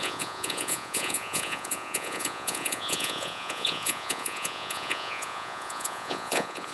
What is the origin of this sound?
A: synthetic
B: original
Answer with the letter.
A